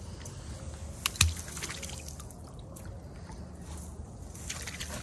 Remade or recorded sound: recorded